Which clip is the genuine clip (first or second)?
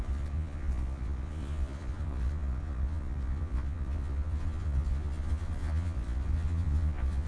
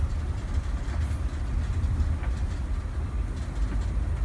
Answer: second